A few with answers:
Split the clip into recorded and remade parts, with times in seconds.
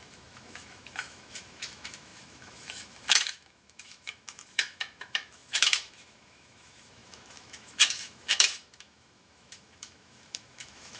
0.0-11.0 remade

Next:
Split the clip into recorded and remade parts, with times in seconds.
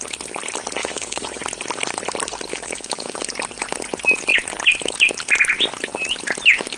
0.0-0.8 recorded; 0.8-1.4 remade; 1.4-2.5 recorded; 2.5-3.2 remade; 3.2-6.8 recorded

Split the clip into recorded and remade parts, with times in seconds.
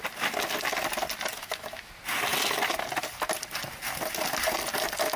0.0-1.4 recorded; 1.4-1.9 remade; 1.9-5.2 recorded